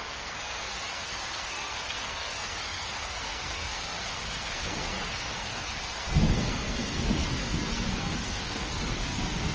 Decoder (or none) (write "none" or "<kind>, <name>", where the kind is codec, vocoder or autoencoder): codec, SNAC